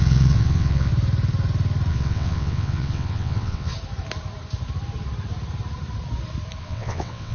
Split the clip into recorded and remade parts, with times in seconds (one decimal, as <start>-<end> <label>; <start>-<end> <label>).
0.0-0.9 remade; 0.9-1.9 recorded; 1.9-3.7 remade; 3.7-6.6 recorded; 6.6-7.3 remade